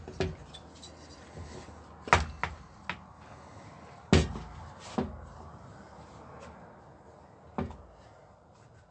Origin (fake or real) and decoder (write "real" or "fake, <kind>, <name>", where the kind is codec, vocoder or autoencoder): real